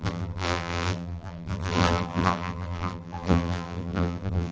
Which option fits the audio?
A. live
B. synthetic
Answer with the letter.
B